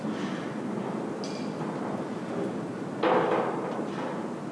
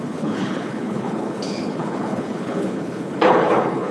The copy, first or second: second